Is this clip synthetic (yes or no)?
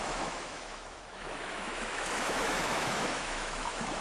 yes